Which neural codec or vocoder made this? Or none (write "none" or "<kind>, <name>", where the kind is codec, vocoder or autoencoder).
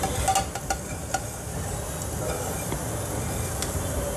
none